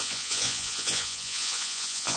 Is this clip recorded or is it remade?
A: remade